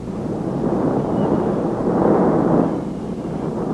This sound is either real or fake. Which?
real